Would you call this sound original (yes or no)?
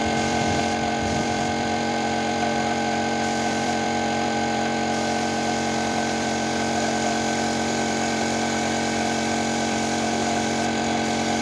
no